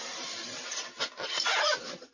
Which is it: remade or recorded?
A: recorded